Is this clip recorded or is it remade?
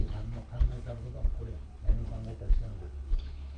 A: remade